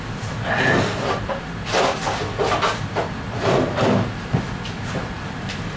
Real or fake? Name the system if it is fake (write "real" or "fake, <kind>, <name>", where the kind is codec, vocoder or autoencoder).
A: fake, vocoder, BigVGAN v2